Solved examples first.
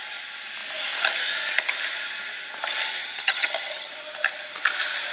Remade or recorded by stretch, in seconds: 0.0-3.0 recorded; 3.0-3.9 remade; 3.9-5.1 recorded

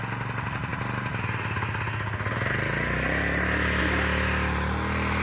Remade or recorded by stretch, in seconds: 0.0-5.2 recorded

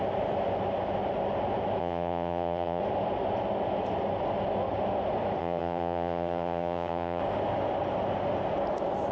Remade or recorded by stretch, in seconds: 0.0-1.8 recorded; 1.8-2.8 remade; 2.8-5.4 recorded; 5.4-7.2 remade; 7.2-9.1 recorded

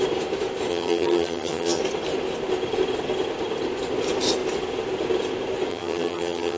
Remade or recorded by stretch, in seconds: 0.0-0.7 recorded; 0.7-1.8 remade; 1.8-5.7 recorded; 5.7-6.6 remade